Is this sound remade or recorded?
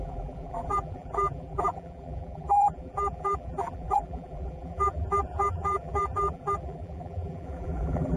remade